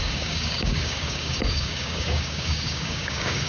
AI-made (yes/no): yes